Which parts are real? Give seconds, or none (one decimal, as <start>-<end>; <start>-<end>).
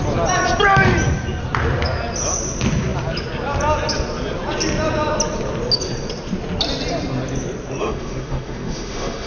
0.0-7.8